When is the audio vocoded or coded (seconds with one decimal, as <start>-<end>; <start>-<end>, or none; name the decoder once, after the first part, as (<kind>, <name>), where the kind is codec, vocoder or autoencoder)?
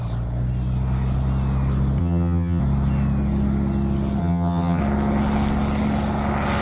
2.0-2.6 (vocoder, HiFi-GAN); 4.2-4.8